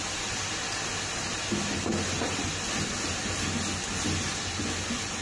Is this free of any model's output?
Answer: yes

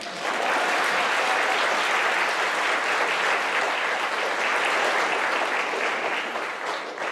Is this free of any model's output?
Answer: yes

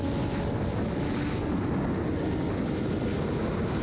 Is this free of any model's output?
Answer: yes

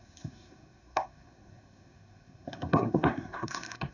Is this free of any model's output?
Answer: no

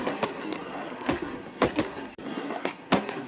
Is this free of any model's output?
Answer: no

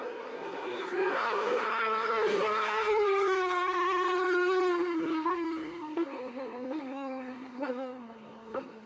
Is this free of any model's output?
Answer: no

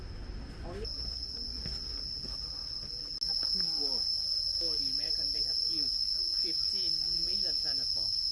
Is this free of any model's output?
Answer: yes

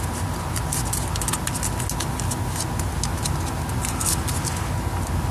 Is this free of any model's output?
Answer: yes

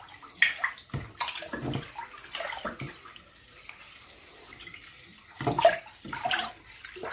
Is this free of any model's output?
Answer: yes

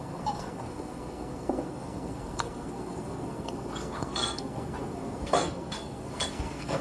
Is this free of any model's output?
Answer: no